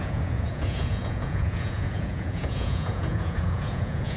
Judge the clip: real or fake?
fake